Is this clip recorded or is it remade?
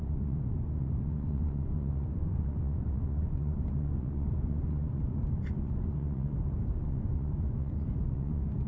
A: remade